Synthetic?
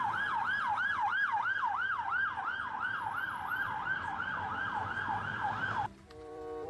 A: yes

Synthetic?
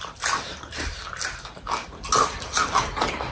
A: no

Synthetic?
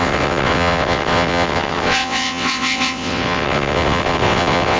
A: yes